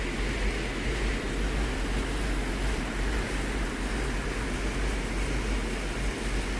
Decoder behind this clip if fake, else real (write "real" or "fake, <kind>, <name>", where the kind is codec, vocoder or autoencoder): real